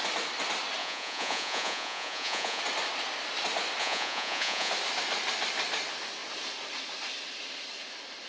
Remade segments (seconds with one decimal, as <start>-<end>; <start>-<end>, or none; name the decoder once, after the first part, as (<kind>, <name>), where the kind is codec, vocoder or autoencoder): 0.8-2.6 (vocoder, Vocos); 3.8-4.7